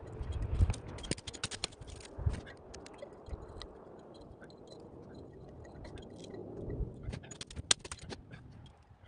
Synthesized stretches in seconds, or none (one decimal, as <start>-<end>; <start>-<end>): none